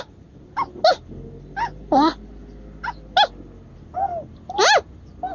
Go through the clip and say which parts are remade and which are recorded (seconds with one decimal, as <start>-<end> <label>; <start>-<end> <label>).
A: 0.0-5.3 recorded